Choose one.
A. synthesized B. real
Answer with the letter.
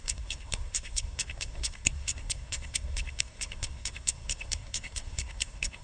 A